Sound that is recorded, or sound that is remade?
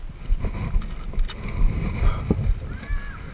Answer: recorded